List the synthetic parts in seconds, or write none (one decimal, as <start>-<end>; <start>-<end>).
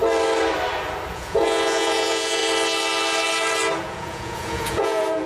1.1-2.4; 3.8-5.3